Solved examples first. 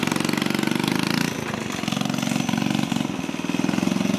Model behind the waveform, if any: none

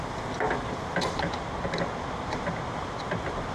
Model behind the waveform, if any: none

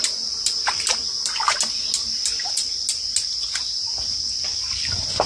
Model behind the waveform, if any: none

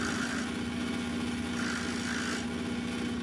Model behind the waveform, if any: none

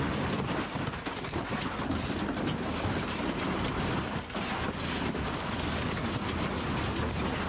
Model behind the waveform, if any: none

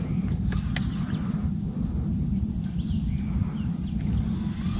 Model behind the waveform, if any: none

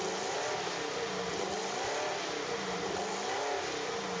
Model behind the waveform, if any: none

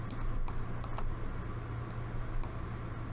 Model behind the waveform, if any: none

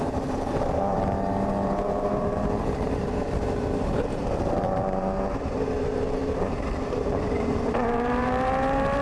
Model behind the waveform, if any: vocoder, BigVGAN v2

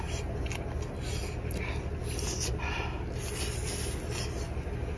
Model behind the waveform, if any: none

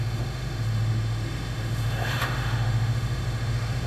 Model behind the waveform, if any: autoencoder, DAC-VAE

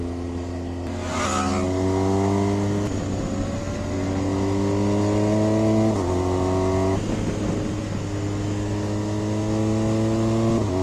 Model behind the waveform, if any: none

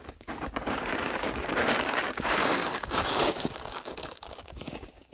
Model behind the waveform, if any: codec, DAC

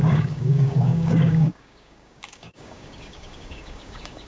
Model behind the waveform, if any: codec, DAC